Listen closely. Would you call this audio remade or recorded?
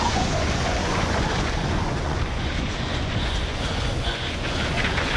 remade